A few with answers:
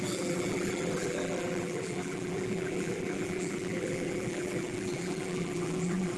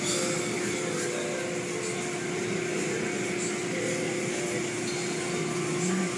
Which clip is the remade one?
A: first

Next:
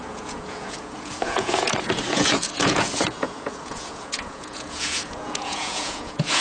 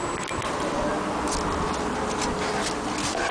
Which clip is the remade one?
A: first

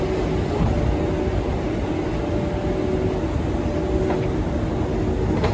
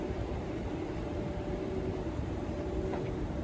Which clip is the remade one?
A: second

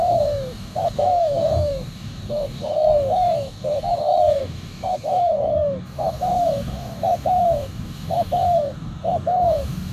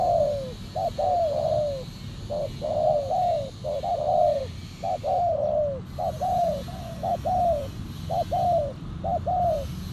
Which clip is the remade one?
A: first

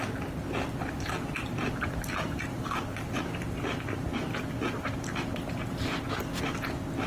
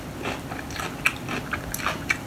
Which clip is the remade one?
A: second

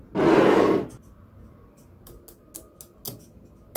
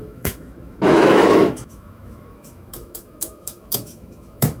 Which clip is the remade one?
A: second